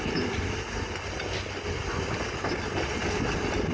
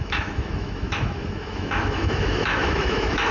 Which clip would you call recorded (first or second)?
first